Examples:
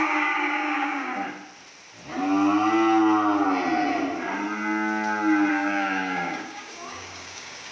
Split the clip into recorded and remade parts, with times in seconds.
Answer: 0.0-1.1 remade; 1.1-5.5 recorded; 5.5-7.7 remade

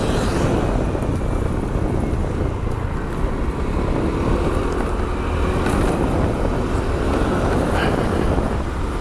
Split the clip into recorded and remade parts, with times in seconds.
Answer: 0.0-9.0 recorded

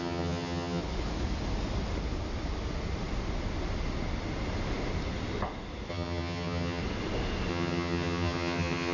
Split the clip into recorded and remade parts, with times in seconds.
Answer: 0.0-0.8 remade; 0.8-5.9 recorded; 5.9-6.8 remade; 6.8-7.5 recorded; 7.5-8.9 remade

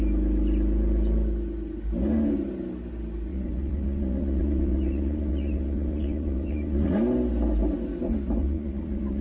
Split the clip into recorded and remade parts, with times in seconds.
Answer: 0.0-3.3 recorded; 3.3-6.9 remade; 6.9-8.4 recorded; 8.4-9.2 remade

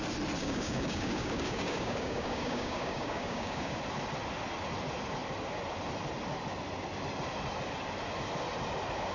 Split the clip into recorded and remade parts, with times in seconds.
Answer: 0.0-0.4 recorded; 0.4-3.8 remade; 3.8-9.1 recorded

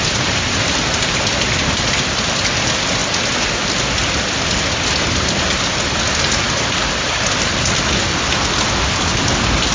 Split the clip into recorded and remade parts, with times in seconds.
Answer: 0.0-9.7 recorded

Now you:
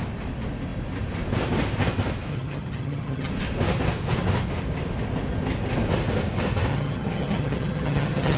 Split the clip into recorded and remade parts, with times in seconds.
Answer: 0.0-2.3 recorded; 2.3-3.3 remade; 3.3-6.7 recorded; 6.7-8.4 remade

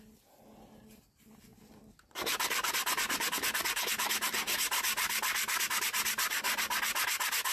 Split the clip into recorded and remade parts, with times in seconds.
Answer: 0.0-7.5 recorded